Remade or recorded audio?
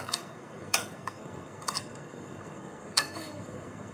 remade